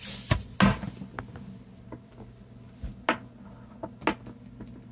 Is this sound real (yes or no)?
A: yes